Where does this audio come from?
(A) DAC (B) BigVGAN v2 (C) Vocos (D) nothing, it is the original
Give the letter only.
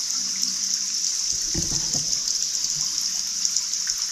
D